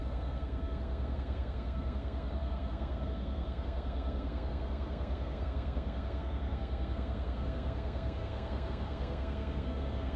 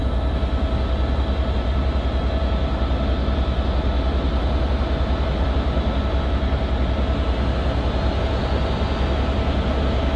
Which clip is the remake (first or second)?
first